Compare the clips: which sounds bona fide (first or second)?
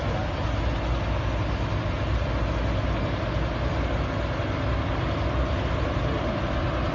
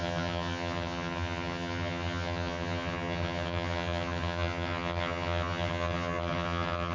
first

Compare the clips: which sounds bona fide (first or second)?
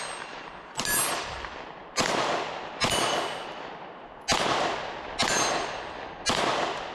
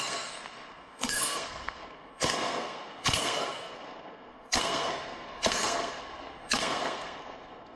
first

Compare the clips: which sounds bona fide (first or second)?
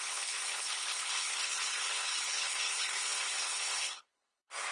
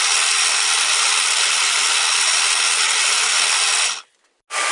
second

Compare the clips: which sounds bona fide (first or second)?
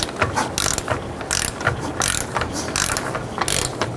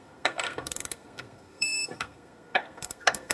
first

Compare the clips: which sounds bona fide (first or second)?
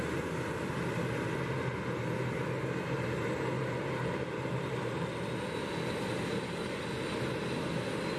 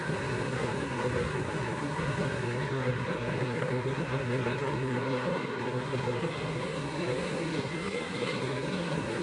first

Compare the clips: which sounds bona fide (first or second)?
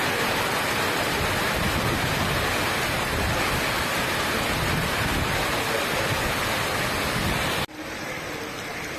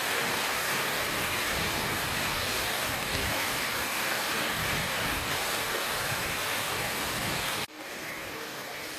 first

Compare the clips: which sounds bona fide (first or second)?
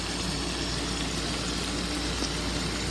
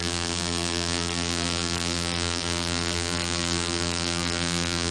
first